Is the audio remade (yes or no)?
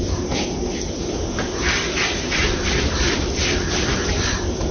no